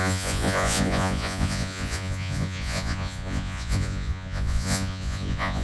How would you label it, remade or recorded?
remade